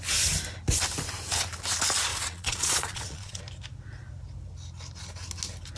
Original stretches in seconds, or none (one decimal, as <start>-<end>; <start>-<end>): 0.0-2.1; 3.4-5.8

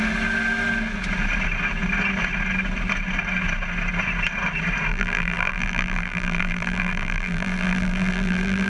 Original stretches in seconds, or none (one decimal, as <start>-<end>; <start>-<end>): 0.0-4.9

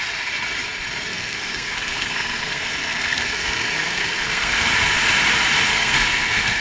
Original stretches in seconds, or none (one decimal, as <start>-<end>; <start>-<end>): 0.0-1.1; 4.7-5.7

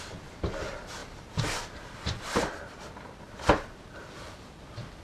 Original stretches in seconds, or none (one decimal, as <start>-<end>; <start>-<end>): none

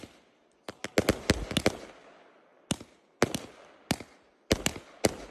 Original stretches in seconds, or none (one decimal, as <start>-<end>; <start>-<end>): 0.0-5.3

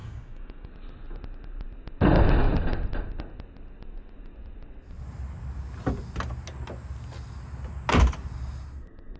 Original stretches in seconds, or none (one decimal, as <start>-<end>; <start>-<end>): 0.7-9.2

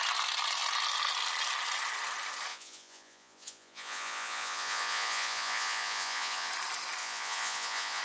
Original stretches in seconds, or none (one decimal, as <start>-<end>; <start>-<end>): 0.0-2.5; 6.5-7.0